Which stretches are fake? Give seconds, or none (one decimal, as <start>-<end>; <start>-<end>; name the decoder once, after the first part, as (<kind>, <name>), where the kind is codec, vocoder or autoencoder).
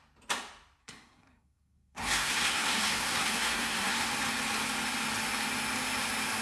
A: 0.8-4.1 (codec, SNAC)